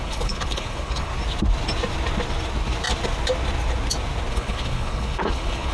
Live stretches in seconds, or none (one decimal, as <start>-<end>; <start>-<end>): 1.1-4.3